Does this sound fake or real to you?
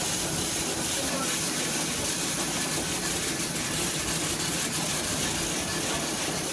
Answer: real